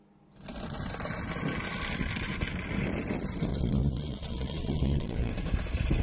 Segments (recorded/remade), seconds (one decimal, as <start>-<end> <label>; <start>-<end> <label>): 0.0-3.5 recorded; 3.5-5.3 remade; 5.3-6.0 recorded